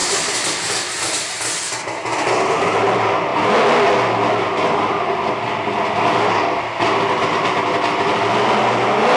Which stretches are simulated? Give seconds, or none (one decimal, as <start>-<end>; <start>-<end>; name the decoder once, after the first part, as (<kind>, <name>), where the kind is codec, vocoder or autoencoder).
none